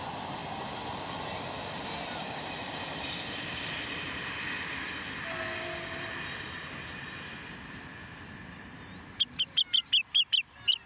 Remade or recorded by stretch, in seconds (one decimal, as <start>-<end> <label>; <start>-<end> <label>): 0.0-10.9 recorded